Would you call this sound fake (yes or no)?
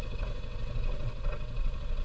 yes